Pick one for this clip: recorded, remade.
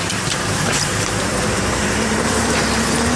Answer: remade